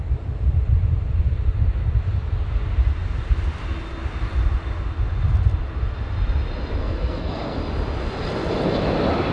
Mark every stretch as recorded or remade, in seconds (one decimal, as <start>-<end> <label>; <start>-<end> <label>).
0.0-6.8 recorded; 6.8-7.6 remade; 7.6-9.3 recorded